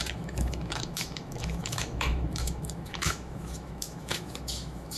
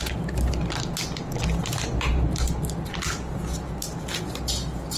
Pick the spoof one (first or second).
first